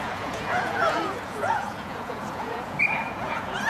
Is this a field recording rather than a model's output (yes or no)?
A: no